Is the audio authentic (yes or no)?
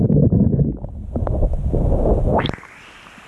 yes